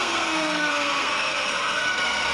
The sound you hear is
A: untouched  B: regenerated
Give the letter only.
B